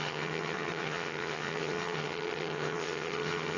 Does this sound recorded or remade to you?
remade